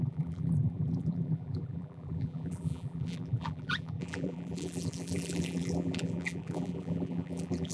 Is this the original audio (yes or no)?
no